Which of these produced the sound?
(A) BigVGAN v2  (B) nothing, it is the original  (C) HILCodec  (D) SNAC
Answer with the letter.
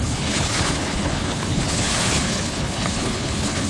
C